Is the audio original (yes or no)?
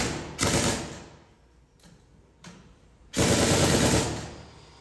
yes